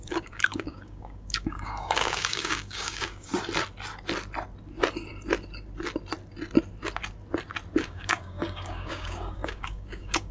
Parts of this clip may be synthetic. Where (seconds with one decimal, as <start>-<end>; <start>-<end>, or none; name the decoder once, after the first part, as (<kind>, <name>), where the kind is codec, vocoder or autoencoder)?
0.0-3.3 (codec, DAC); 7.8-10.3